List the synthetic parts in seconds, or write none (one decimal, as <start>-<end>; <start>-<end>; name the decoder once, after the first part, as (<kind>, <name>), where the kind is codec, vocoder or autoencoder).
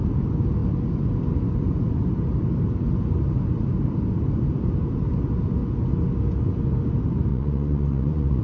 7.3-8.4 (vocoder, Vocos)